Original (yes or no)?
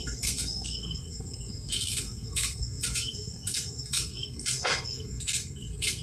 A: no